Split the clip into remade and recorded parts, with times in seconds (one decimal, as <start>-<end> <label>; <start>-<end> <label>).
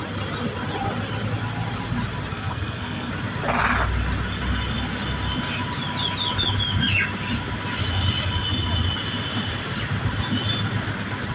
0.0-2.3 recorded; 2.3-3.1 remade; 3.1-11.3 recorded